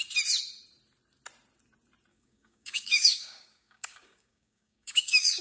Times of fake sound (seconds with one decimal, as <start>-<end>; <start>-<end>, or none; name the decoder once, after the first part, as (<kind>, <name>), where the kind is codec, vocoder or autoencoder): 2.1-5.4 (codec, DAC)